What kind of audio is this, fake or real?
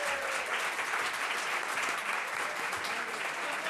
real